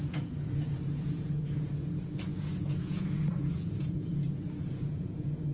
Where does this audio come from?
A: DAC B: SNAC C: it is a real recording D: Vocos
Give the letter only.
D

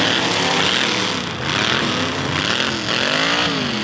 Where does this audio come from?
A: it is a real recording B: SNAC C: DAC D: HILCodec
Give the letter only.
A